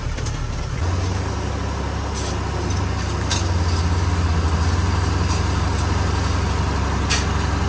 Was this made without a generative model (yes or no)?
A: yes